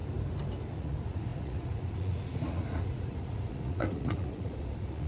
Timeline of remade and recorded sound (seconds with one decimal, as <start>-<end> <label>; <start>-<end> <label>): 0.0-0.7 recorded; 0.7-5.1 remade